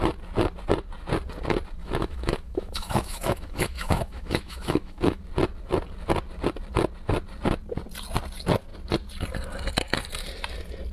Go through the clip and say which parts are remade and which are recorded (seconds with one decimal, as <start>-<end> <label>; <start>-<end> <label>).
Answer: 0.0-1.8 recorded; 1.8-5.2 remade; 5.2-10.9 recorded